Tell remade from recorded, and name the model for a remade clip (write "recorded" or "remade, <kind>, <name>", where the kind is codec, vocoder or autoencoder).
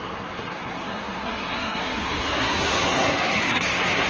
remade, codec, SNAC